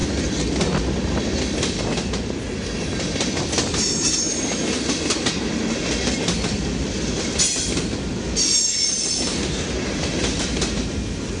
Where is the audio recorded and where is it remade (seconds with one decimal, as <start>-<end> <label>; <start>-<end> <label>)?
0.0-11.4 recorded